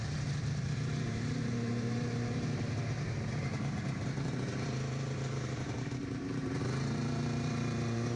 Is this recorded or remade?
remade